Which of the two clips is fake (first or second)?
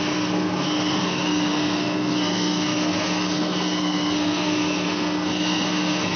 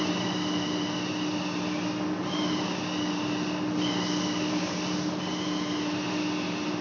first